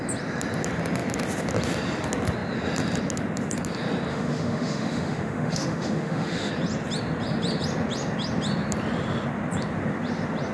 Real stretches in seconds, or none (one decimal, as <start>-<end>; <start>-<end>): 0.0-4.1; 6.5-10.5